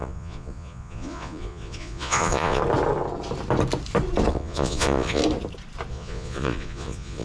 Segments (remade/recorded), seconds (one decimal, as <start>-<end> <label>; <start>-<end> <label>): 0.0-2.6 remade; 2.6-4.3 recorded; 4.3-5.2 remade; 5.2-5.9 recorded; 5.9-7.2 remade